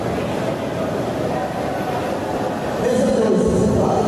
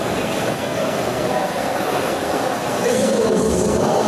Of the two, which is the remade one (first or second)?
second